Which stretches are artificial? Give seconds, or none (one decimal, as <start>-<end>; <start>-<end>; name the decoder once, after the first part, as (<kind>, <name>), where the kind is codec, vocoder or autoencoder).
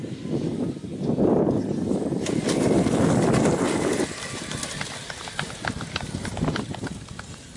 none